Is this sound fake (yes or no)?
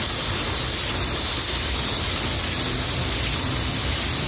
no